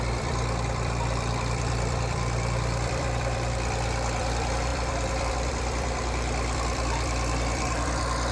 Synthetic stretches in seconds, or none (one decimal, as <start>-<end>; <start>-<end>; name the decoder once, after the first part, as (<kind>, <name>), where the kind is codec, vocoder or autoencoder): 0.0-8.3 (vocoder, BigVGAN v2)